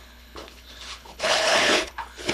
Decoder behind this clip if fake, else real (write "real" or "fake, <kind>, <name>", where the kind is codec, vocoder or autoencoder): fake, codec, HILCodec